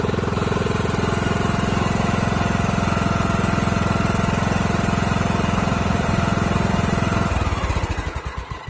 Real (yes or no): yes